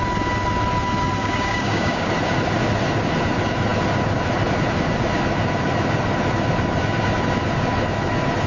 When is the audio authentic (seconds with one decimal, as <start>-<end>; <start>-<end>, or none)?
0.0-1.2; 2.1-8.5